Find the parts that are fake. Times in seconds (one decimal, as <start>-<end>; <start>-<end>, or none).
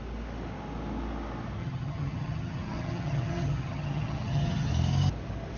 1.6-4.7